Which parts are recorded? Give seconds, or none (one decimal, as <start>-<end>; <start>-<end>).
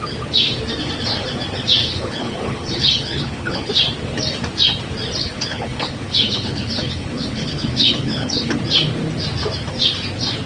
0.0-1.8; 3.7-5.2; 8.6-10.5